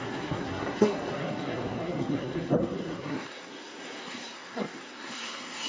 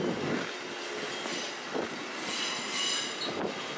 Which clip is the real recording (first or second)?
second